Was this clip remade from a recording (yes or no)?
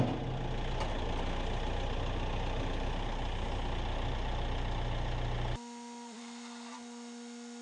no